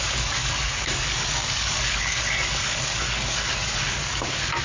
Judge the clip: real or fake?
fake